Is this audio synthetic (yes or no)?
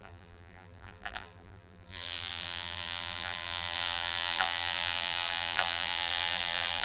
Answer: yes